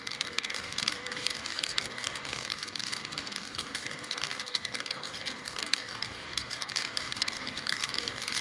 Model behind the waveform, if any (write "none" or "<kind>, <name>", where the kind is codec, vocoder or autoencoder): codec, DAC